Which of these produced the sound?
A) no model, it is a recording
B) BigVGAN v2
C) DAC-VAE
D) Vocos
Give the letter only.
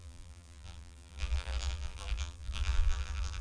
B